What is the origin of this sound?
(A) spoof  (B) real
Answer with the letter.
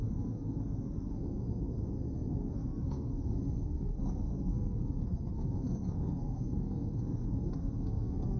A